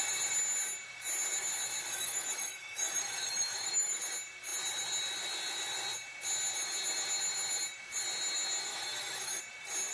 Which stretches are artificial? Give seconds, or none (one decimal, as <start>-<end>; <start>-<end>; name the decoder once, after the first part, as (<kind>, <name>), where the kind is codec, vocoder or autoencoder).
1.9-4.0 (autoencoder, DAC-VAE); 8.7-9.4